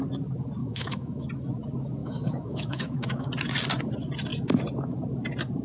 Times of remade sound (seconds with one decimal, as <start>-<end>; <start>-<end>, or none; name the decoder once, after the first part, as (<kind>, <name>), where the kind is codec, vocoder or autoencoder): 0.6-1.3 (autoencoder, DAC-VAE); 2.0-3.3